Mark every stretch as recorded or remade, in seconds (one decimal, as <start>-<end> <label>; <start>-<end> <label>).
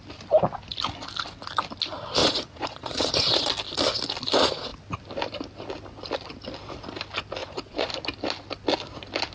0.0-2.2 recorded; 2.2-3.5 remade; 3.5-7.4 recorded; 7.4-7.9 remade; 7.9-9.3 recorded